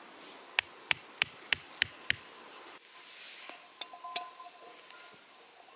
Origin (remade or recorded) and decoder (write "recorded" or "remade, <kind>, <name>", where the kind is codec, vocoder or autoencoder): recorded